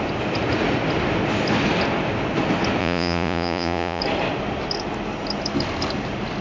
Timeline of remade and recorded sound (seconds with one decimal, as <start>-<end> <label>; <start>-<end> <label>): 0.0-2.8 recorded; 2.8-4.0 remade; 4.0-6.4 recorded